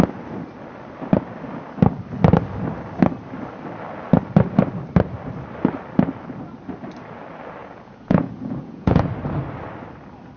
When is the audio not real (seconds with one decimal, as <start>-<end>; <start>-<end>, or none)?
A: 7.6-9.1